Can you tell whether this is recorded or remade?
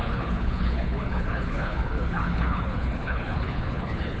remade